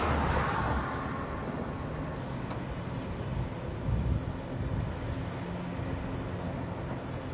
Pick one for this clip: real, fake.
real